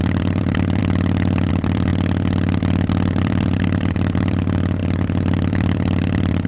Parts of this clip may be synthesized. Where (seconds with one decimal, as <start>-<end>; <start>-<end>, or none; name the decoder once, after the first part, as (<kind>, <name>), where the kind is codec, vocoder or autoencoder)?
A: 0.0-0.8 (vocoder, BigVGAN v2); 1.5-1.9; 3.2-6.5